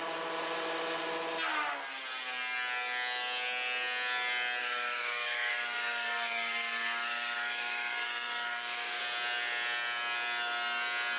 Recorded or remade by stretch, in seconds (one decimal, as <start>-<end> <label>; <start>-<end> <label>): 0.0-4.6 recorded; 4.6-9.0 remade; 9.0-11.2 recorded